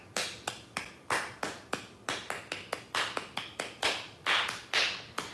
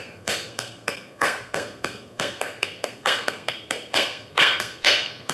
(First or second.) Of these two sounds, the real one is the first